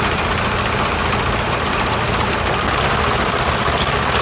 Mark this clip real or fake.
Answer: real